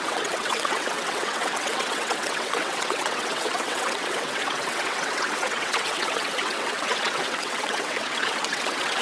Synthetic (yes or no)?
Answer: yes